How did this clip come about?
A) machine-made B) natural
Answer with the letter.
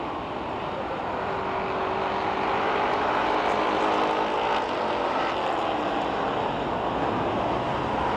B